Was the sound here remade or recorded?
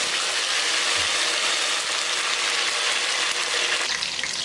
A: recorded